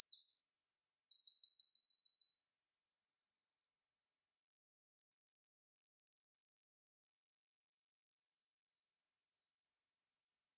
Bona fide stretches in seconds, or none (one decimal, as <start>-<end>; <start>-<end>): 0.0-2.9; 4.3-10.6